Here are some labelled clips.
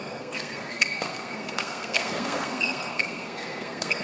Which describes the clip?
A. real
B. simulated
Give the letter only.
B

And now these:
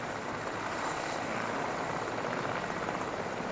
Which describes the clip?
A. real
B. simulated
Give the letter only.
A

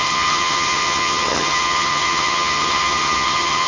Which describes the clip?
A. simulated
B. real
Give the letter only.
A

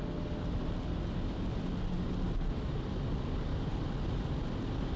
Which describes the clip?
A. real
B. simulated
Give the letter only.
A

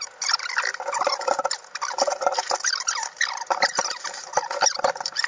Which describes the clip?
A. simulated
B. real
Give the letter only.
B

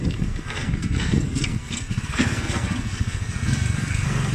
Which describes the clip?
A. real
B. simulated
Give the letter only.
B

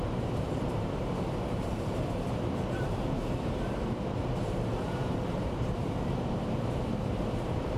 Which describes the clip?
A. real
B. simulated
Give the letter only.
B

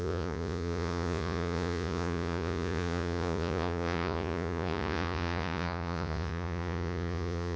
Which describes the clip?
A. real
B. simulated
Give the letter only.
B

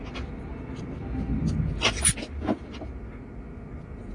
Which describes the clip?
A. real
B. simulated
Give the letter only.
A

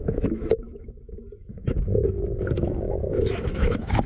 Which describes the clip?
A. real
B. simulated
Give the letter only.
B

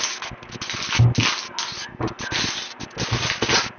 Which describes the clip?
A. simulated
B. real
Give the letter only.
B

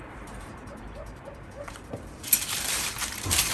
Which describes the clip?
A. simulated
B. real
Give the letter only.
A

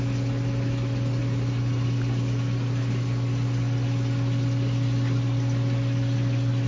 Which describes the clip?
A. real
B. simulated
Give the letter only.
A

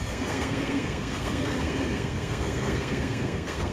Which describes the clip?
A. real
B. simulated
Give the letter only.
B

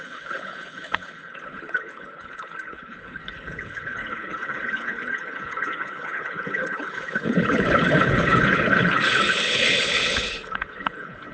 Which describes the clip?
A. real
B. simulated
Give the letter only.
B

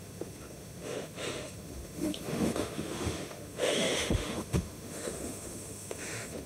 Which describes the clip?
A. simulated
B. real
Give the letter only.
A